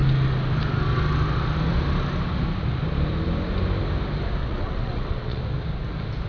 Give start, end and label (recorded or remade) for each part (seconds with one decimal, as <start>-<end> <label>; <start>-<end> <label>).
0.0-4.4 recorded; 4.4-5.4 remade; 5.4-6.3 recorded